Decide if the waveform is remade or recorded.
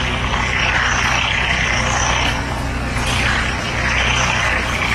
recorded